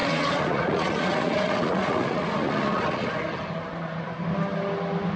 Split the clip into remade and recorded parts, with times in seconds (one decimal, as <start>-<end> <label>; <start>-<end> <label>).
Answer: 0.0-3.1 remade; 3.1-5.2 recorded